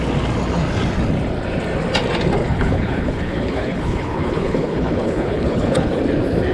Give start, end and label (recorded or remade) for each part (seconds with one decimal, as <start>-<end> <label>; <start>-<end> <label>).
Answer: 0.0-2.4 recorded; 2.4-6.0 remade; 6.0-6.5 recorded